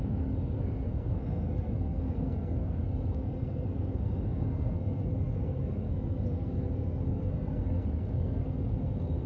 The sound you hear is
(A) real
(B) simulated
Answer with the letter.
B